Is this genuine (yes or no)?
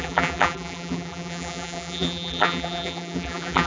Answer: no